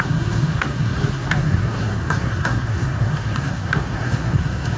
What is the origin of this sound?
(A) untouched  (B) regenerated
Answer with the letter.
B